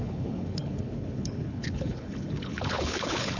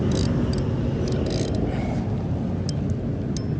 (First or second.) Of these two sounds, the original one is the second